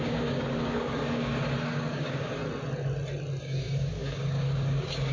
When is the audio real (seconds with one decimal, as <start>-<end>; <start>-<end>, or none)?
2.4-3.4